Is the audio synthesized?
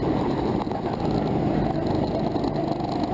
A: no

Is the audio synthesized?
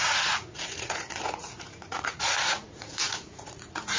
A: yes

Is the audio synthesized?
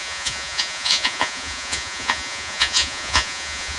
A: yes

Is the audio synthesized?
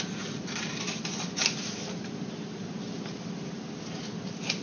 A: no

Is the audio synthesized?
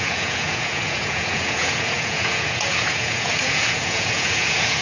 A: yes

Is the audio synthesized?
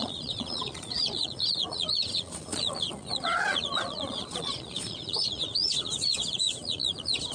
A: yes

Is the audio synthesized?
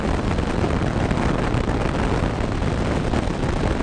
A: no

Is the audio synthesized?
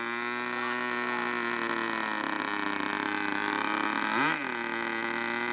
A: no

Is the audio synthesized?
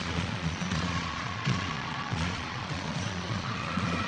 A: yes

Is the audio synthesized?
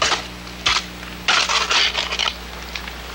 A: no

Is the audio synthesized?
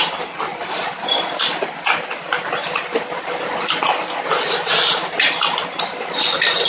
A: no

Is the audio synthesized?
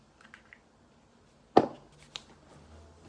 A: no